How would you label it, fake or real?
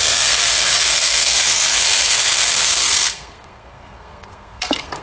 fake